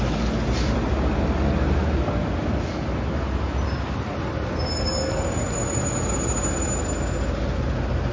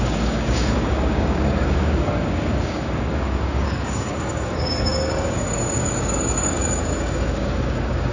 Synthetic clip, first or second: second